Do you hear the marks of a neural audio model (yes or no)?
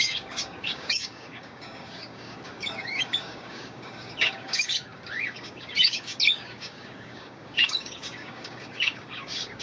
yes